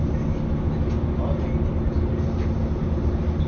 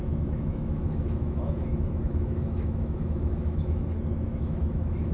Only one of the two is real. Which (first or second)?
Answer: first